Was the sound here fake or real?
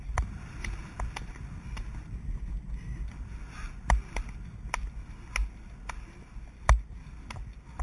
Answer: real